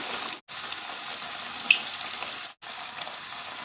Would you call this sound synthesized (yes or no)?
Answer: no